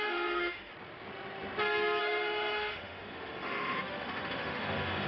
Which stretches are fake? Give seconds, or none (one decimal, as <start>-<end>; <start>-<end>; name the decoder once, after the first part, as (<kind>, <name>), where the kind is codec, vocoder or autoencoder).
0.0-0.7 (autoencoder, DAC-VAE); 2.0-5.1